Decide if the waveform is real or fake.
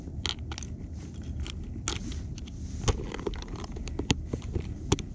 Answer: real